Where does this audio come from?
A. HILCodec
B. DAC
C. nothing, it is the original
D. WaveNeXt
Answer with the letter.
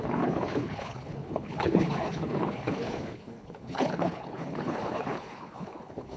A